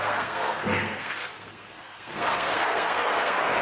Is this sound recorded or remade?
remade